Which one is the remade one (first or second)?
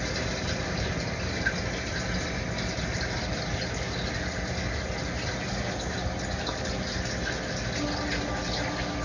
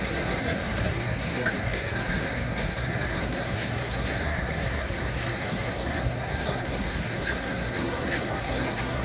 second